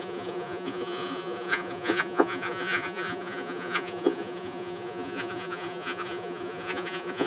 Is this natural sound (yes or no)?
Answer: no